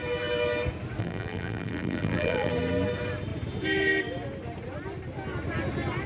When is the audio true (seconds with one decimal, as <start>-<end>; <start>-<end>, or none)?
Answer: 0.0-1.0; 2.5-6.1